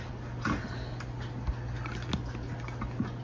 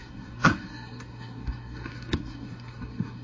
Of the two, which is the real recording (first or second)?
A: first